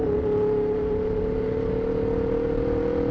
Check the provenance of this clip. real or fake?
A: real